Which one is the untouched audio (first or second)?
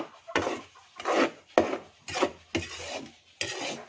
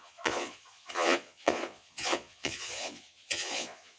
first